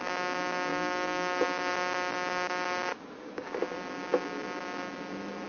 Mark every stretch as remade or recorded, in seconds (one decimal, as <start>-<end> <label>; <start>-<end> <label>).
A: 0.0-0.7 recorded; 0.7-1.4 remade; 1.4-2.9 recorded; 2.9-3.6 remade; 3.6-5.5 recorded